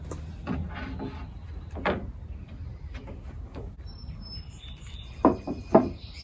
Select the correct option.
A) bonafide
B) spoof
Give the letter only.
A